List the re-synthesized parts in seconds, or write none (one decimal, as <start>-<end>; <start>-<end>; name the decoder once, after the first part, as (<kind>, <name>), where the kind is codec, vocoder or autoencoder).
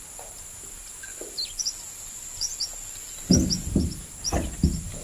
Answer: 0.0-1.1 (vocoder, BigVGAN v2); 1.6-2.5; 3.6-5.0